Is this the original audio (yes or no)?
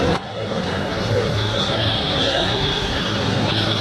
no